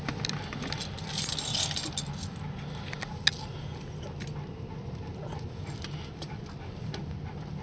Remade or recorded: recorded